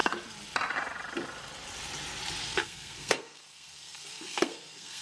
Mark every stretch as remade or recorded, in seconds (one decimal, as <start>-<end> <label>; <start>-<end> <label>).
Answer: 0.0-2.4 recorded; 2.4-5.0 remade